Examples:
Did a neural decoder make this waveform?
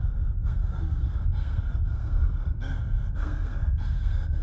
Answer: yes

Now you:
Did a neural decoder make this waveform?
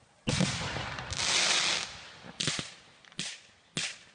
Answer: no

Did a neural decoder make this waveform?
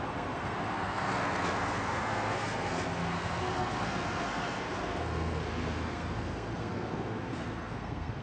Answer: yes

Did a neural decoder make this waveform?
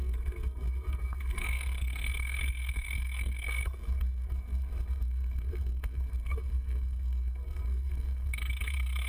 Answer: yes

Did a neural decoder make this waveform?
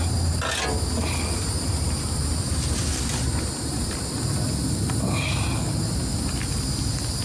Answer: no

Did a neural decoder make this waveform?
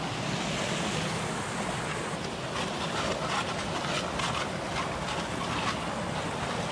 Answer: no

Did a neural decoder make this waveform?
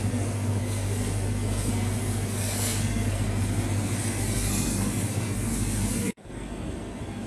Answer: yes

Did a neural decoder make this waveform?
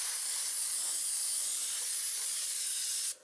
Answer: no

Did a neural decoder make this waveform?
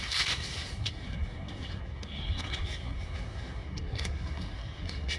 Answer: yes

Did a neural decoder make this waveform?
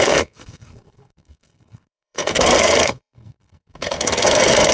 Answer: yes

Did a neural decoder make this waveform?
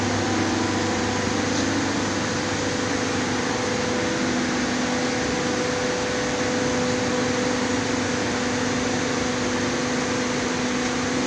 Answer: no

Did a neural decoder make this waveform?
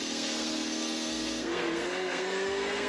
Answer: yes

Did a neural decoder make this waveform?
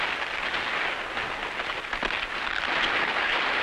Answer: no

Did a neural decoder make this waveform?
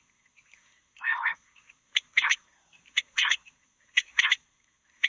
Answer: yes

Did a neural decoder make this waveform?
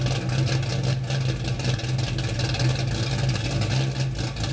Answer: no